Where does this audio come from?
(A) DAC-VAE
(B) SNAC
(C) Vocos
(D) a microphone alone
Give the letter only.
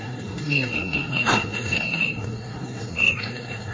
B